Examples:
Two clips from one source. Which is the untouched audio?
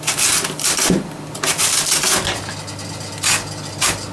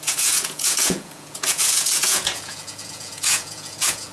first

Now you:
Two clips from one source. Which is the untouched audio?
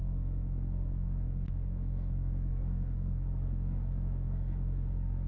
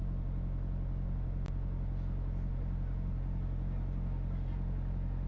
second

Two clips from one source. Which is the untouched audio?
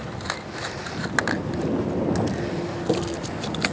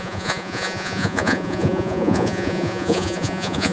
first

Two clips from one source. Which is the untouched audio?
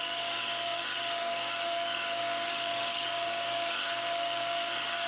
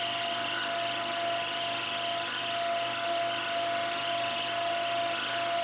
second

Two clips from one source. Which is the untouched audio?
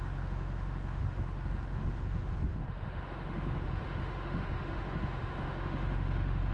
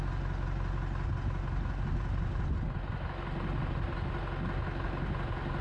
second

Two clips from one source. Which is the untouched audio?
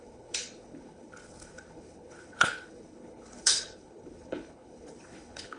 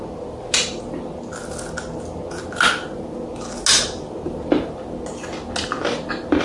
second